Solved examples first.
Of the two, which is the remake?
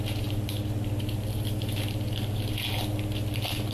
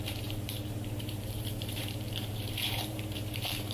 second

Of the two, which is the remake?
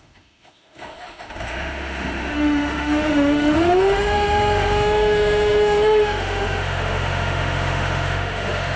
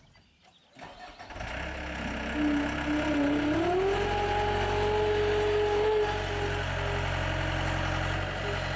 first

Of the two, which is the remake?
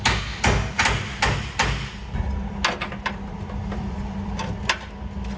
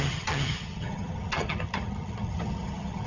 second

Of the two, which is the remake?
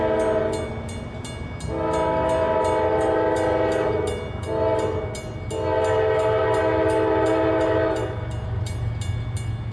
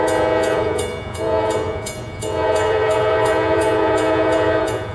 second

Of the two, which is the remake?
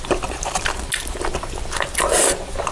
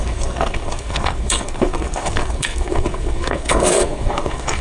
second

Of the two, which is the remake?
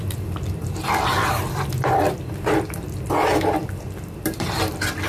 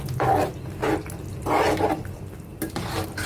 first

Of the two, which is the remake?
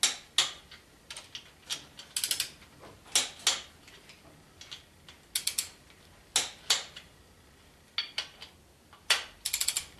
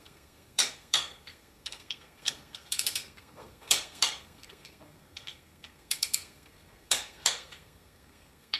second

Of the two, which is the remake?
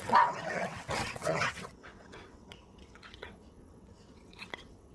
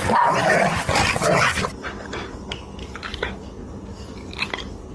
first